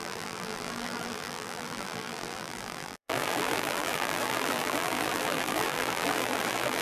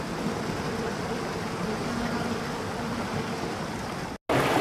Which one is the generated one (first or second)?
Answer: first